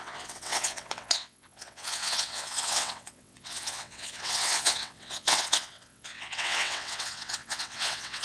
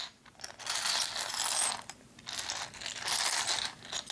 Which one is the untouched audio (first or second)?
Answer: second